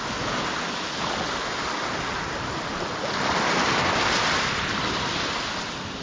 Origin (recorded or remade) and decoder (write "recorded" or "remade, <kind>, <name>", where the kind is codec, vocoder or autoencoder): recorded